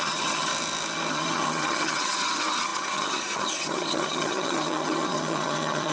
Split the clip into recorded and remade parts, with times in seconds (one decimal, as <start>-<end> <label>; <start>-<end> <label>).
0.0-0.5 remade; 0.5-1.1 recorded; 1.1-5.9 remade